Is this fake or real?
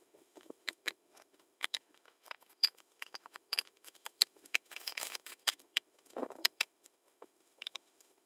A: fake